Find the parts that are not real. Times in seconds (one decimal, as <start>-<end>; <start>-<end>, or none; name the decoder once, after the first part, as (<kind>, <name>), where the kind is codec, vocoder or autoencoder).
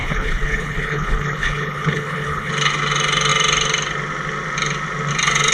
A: 0.0-2.5 (codec, HILCodec)